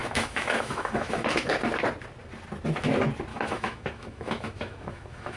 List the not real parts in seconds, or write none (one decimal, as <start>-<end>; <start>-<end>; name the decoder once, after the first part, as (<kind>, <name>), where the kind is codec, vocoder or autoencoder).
0.0-1.5 (autoencoder, DAC-VAE); 3.3-5.4